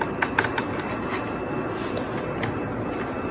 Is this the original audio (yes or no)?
yes